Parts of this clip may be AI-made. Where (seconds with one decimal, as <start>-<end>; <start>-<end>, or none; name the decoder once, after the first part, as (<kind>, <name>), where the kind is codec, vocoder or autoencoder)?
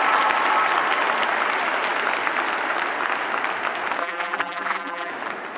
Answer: 4.0-5.1 (vocoder, BigVGAN v2)